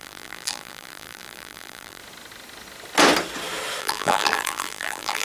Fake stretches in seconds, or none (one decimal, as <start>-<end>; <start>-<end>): 0.0-2.0; 3.8-5.2